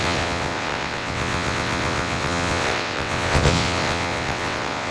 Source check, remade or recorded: remade